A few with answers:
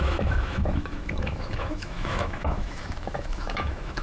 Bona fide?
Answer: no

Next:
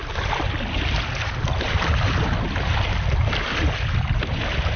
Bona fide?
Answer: yes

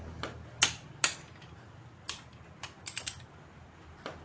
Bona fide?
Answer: yes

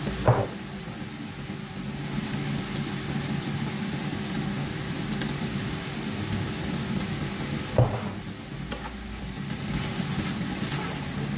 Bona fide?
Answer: yes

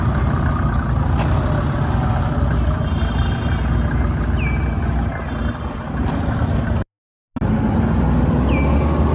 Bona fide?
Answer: yes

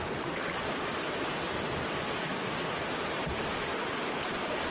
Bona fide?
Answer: yes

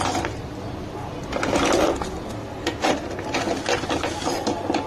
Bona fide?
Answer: yes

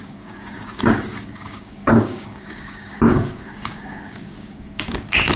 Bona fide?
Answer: no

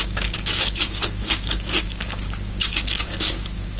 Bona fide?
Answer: no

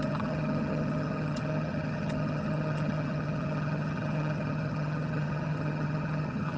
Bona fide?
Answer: no